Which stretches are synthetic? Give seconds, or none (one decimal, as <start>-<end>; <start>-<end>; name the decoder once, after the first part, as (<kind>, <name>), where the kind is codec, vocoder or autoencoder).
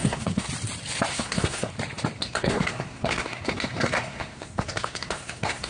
0.0-0.5 (codec, SNAC); 1.1-1.7; 2.2-5.7